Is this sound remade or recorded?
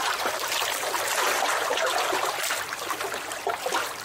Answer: recorded